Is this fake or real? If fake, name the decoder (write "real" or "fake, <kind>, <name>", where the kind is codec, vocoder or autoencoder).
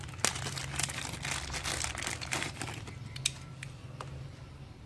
real